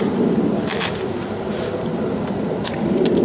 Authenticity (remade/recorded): recorded